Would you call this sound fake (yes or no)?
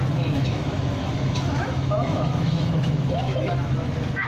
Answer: yes